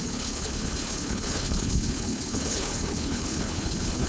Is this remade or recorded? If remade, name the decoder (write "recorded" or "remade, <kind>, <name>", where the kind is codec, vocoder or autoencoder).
remade, codec, HILCodec